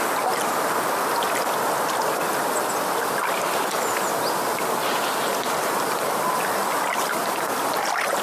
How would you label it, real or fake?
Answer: real